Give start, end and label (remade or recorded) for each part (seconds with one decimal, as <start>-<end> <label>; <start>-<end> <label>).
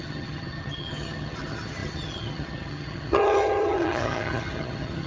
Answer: 0.0-5.1 remade